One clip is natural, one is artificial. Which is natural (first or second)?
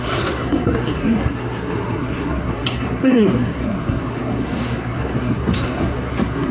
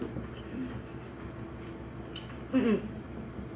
second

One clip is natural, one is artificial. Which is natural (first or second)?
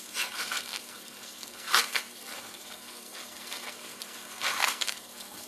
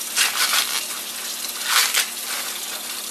second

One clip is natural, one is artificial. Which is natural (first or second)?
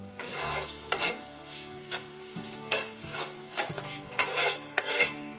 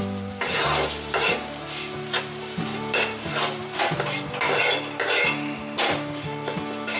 second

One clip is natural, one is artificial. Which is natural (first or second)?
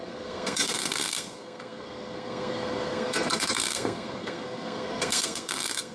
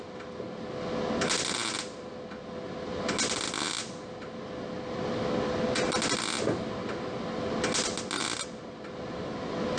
second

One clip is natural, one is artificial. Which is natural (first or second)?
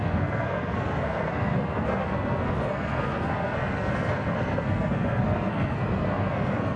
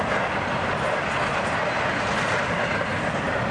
second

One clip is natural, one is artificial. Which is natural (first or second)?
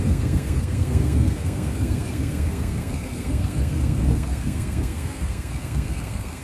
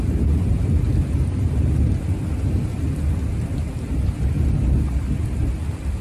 second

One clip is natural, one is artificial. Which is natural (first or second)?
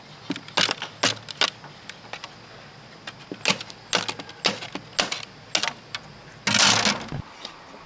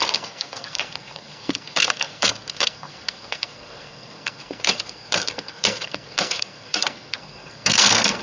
first